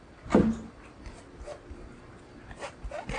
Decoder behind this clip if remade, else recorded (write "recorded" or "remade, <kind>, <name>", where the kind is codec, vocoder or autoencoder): recorded